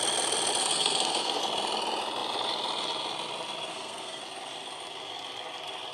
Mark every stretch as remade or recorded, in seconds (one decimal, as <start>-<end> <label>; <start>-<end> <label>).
0.0-0.6 recorded; 0.6-1.4 remade; 1.4-3.7 recorded; 3.7-4.2 remade; 4.2-5.9 recorded